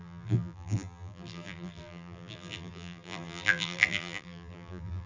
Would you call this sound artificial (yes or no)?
yes